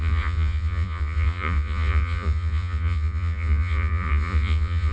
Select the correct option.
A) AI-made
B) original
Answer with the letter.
A